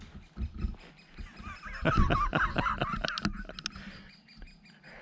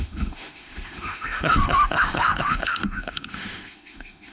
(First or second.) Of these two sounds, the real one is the first